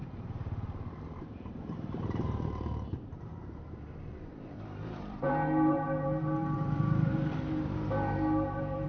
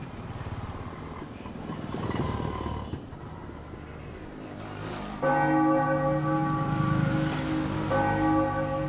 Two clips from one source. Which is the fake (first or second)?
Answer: first